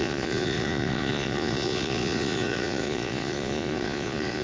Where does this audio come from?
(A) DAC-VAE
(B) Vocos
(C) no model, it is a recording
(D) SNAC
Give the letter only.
B